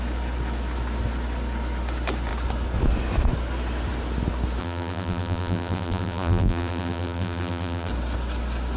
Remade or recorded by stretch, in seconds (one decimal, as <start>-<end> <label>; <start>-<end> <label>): 0.0-4.6 recorded; 4.6-7.9 remade; 7.9-8.8 recorded